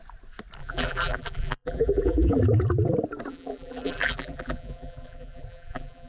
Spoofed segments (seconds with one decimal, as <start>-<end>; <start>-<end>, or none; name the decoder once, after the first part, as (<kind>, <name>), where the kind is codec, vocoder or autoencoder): 0.6-2.4 (vocoder, BigVGAN v2); 3.3-6.1